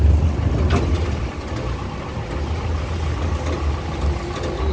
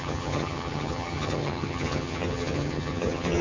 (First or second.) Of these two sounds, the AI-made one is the second